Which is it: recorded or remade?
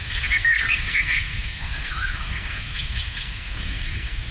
remade